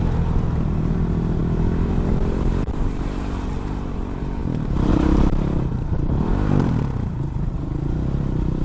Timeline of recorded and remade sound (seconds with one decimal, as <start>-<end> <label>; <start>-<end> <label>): 0.0-8.6 remade

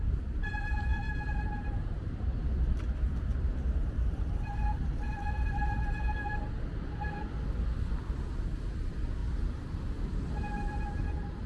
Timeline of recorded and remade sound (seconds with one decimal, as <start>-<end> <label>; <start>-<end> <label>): 0.0-0.9 recorded; 0.9-5.7 remade; 5.7-9.2 recorded; 9.2-10.3 remade; 10.3-11.5 recorded

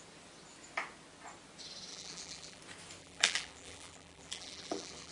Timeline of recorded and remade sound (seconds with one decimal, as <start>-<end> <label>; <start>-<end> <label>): 0.0-1.9 recorded; 1.9-2.6 remade; 2.6-3.0 recorded; 3.0-5.1 remade

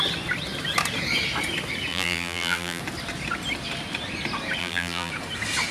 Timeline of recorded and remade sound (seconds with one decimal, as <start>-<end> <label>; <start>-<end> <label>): 0.0-1.9 recorded; 1.9-2.8 remade; 2.8-4.6 recorded; 4.6-5.1 remade; 5.1-5.7 recorded

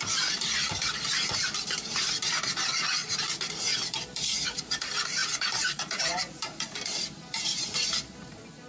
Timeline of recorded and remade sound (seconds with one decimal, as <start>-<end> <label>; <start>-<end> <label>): 0.0-8.7 remade